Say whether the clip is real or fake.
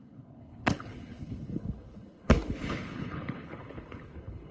fake